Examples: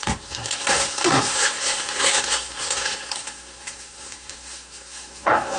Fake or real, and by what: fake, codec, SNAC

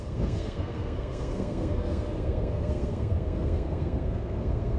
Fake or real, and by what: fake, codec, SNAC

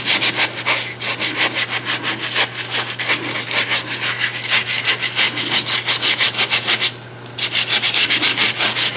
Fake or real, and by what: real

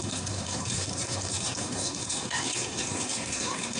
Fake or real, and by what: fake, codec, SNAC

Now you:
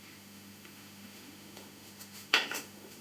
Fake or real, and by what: fake, autoencoder, DAC-VAE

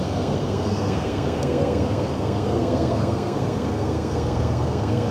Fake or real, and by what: fake, codec, SNAC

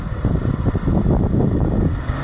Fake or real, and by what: real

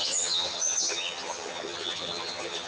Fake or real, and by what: fake, vocoder, HiFi-GAN